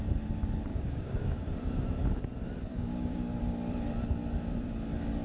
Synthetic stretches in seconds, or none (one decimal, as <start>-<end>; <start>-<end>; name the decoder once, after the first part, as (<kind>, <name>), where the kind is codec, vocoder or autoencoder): 0.7-2.2 (codec, DAC); 2.7-3.4